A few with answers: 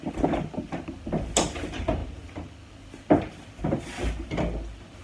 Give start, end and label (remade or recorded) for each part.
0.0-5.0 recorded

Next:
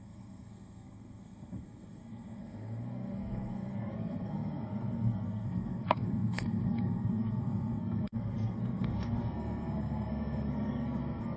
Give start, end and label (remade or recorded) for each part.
0.0-11.4 remade